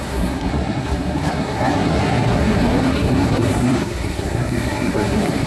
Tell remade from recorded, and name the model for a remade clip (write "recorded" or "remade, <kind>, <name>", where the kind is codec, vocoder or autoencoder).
remade, codec, SNAC